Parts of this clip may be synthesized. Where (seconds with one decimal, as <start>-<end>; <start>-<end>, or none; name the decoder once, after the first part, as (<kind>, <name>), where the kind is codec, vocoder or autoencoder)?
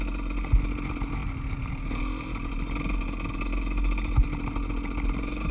none